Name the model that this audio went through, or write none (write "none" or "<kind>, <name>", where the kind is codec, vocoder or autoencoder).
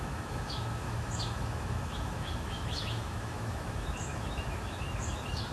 autoencoder, DAC-VAE